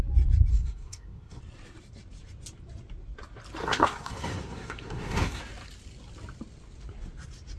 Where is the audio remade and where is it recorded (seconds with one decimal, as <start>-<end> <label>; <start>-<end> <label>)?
0.0-0.5 recorded; 0.5-1.4 remade; 1.4-3.6 recorded; 3.6-5.4 remade; 5.4-7.6 recorded